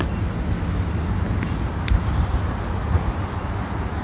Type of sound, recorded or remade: recorded